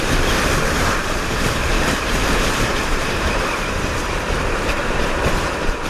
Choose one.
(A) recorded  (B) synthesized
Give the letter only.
B